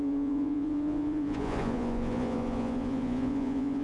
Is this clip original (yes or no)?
no